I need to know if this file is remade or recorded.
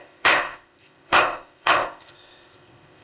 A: remade